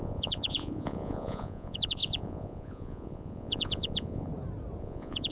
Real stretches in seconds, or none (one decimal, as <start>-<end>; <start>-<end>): 4.3-4.8